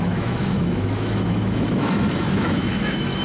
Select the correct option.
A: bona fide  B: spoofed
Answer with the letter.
B